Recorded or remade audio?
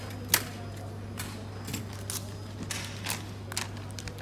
recorded